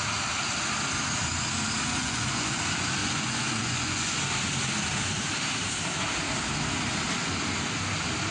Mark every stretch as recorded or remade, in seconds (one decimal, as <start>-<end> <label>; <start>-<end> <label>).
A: 0.0-2.0 recorded; 2.0-2.6 remade; 2.6-3.0 recorded; 3.0-4.2 remade; 4.2-8.3 recorded